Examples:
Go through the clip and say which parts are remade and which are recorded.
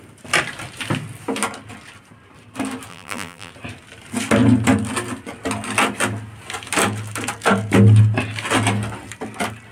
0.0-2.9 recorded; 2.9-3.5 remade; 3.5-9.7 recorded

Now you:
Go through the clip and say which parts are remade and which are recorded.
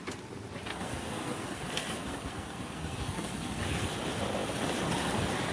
0.0-0.7 recorded; 0.7-3.9 remade; 3.9-5.5 recorded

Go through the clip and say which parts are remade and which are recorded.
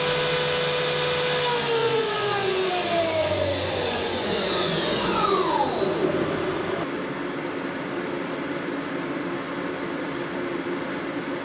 0.0-1.8 recorded; 1.8-2.7 remade; 2.7-3.2 recorded; 3.2-5.5 remade; 5.5-11.4 recorded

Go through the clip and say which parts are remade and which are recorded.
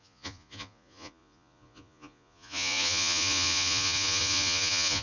0.0-5.0 remade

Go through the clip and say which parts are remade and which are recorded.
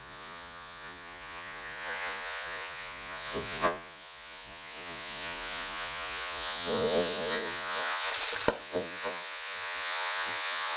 0.0-8.1 remade; 8.1-8.6 recorded; 8.6-10.8 remade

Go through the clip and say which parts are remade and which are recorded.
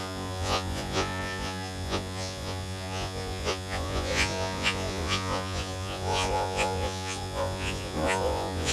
0.0-8.7 remade